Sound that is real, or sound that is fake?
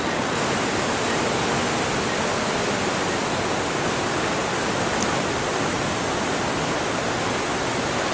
real